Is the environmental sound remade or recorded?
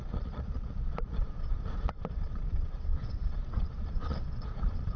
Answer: remade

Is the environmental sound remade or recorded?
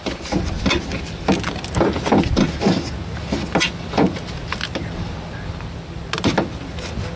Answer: recorded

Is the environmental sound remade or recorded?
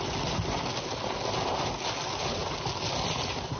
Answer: recorded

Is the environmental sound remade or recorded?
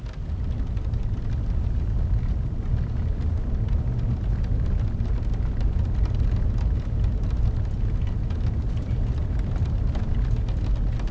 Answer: recorded